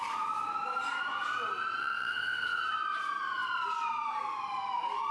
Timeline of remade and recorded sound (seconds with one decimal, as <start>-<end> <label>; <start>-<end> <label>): 0.0-1.8 recorded; 1.8-2.6 remade; 2.6-5.1 recorded